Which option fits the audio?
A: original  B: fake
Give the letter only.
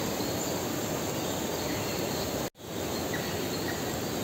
A